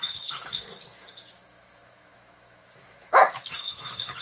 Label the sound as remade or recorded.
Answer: remade